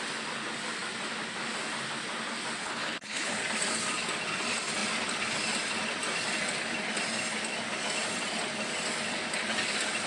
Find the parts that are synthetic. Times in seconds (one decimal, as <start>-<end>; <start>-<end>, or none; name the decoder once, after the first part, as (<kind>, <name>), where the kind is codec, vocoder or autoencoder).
2.6-3.3 (codec, HILCodec)